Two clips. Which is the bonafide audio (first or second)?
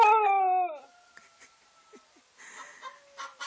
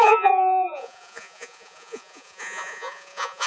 first